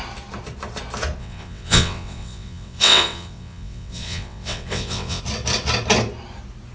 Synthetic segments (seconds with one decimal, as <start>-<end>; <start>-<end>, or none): 1.2-5.2